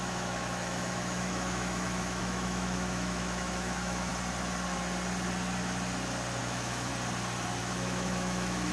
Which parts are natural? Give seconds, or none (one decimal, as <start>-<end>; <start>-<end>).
4.1-6.4; 6.9-7.6